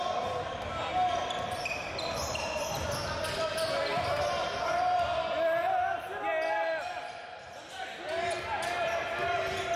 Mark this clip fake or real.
real